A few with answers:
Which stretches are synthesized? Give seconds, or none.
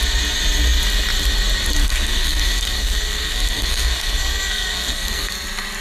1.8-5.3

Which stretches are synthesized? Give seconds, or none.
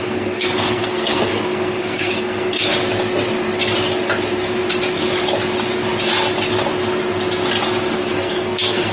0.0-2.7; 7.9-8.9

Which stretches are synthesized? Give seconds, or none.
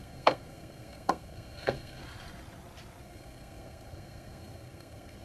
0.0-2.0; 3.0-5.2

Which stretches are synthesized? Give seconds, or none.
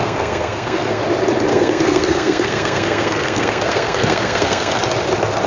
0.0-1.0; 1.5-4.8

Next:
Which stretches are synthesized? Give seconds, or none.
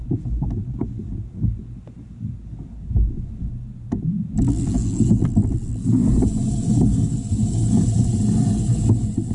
none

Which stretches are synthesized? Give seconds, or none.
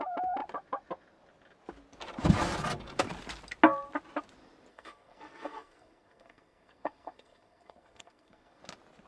4.7-8.6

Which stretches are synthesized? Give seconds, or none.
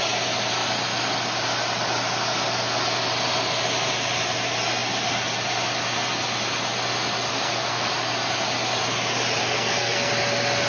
7.3-7.9; 9.4-10.1